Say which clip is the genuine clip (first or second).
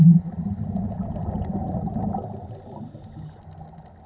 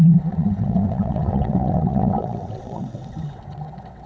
first